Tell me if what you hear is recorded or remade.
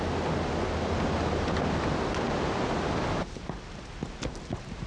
recorded